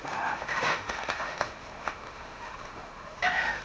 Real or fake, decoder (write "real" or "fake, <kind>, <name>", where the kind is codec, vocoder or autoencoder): fake, autoencoder, DAC-VAE